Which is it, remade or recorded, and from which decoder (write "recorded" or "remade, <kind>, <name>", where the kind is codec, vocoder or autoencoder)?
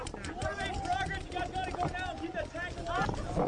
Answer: recorded